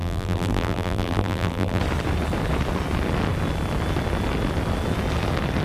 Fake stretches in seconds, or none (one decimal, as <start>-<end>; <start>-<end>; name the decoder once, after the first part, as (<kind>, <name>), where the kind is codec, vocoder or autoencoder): 0.0-1.8 (vocoder, BigVGAN v2)